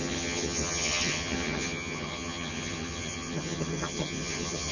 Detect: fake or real fake